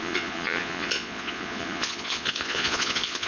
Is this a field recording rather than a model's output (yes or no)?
no